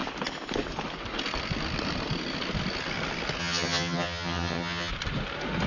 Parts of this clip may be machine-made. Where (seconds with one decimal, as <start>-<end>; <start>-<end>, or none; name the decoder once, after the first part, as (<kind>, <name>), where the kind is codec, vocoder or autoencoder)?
3.4-4.9 (vocoder, HiFi-GAN)